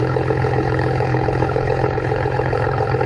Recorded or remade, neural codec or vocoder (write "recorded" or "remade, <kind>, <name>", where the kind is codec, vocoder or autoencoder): remade, codec, HILCodec